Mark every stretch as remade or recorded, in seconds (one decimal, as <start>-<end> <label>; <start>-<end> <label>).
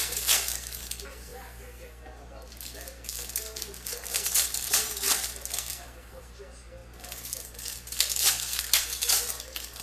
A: 0.0-9.8 remade